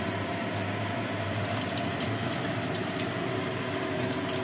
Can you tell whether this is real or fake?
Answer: real